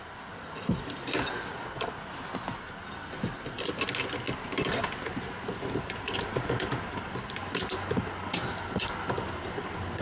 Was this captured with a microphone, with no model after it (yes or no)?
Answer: yes